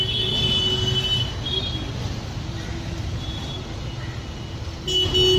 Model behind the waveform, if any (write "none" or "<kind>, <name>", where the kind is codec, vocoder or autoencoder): none